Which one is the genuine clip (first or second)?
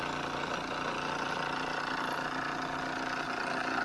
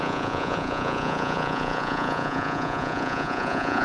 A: first